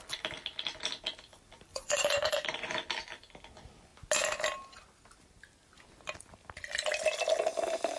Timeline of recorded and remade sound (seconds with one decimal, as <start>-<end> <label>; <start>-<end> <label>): 0.0-1.7 recorded; 1.7-2.8 remade; 2.8-8.0 recorded